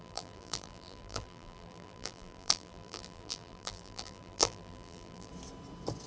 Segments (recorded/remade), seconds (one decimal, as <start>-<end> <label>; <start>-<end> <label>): 0.0-5.3 remade; 5.3-6.1 recorded